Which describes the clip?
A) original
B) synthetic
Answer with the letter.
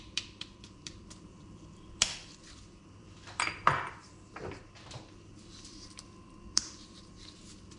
B